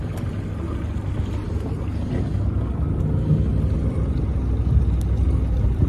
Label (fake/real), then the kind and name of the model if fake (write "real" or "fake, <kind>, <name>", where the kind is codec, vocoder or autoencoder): real